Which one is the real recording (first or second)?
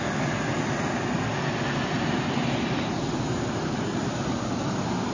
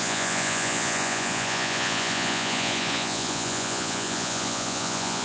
first